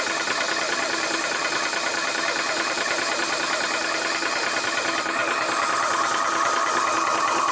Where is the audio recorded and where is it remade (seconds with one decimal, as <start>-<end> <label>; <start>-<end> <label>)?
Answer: 0.0-7.5 recorded